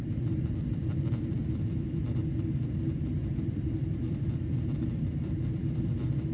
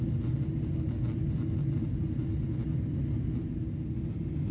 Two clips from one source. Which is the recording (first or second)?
second